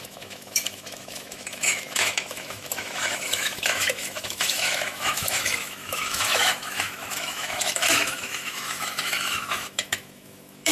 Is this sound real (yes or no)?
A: no